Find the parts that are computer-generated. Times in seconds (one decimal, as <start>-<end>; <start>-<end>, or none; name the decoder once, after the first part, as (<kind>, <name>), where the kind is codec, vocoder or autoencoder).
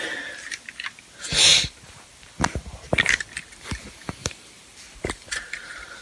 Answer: 1.5-2.1 (vocoder, BigVGAN v2); 4.2-5.4